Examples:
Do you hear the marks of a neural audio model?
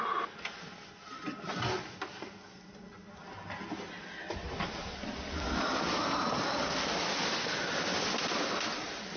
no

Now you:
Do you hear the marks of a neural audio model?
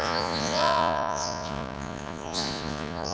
yes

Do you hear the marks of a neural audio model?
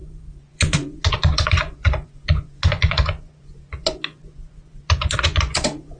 yes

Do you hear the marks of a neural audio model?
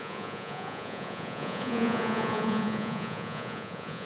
yes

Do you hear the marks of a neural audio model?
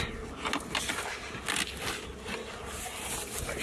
no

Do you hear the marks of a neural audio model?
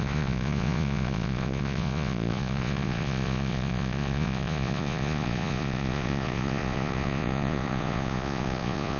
yes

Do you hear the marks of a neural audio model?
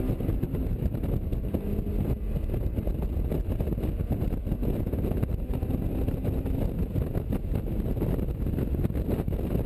no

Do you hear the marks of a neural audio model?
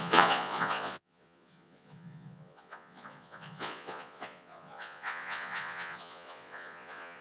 yes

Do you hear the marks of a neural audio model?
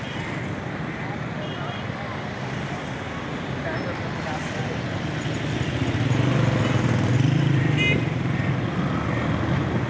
no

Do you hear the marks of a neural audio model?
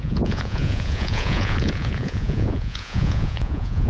yes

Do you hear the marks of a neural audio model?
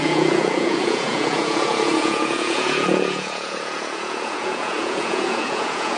yes